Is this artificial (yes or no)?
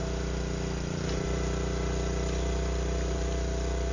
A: no